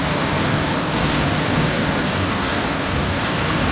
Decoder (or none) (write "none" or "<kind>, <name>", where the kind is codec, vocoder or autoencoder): codec, DAC